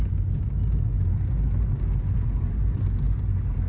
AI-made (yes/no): no